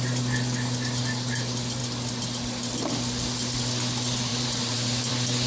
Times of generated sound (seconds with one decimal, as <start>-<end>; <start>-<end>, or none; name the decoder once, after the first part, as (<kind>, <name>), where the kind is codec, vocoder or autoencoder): 4.3-5.1 (vocoder, BigVGAN v2)

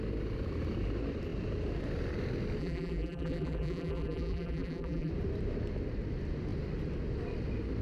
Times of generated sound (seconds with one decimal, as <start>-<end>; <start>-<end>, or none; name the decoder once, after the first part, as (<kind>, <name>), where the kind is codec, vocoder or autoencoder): 2.6-5.1 (vocoder, BigVGAN v2)

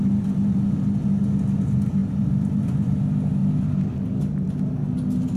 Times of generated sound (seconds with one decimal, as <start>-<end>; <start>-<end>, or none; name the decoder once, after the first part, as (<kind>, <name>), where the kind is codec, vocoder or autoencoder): 2.0-3.0 (vocoder, BigVGAN v2); 3.4-3.9

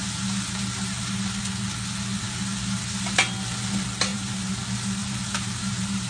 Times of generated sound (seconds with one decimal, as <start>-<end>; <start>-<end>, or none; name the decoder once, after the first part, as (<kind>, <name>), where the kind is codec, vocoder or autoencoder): 4.1-4.6 (vocoder, BigVGAN v2); 5.0-6.1